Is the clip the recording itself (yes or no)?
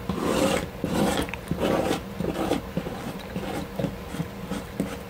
yes